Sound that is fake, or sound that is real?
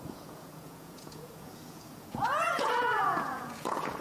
fake